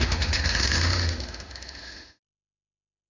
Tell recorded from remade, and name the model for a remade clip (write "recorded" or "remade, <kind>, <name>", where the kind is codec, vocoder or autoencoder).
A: remade, autoencoder, DAC-VAE